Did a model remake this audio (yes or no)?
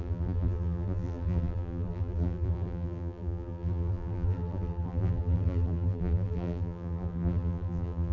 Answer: yes